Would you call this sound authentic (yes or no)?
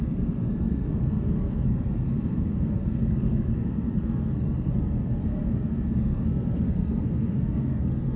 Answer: no